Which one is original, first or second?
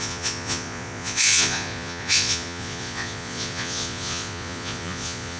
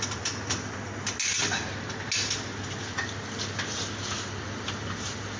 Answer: second